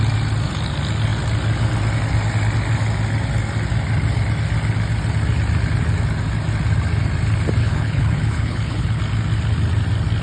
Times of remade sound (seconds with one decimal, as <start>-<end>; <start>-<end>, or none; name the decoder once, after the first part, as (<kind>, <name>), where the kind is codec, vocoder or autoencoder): 7.6-9.0 (codec, HILCodec)

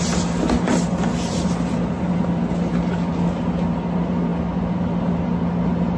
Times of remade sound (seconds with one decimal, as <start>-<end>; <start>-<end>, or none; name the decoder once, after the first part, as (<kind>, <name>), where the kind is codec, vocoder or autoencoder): none

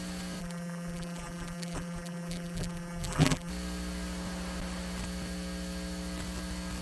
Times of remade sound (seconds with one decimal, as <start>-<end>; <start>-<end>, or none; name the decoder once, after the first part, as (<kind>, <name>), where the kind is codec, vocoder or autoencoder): 0.4-3.5 (vocoder, BigVGAN v2)

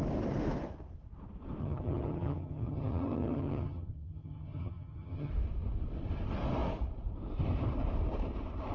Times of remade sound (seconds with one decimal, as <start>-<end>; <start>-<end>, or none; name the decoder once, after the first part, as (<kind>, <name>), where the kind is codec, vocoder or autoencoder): 1.6-5.3 (vocoder, HiFi-GAN)